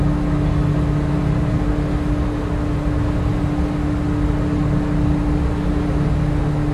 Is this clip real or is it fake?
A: real